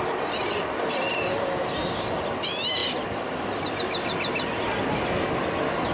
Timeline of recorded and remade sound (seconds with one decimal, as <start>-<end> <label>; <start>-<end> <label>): 0.0-5.9 recorded